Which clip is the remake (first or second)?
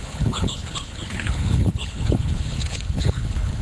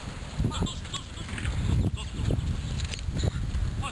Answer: first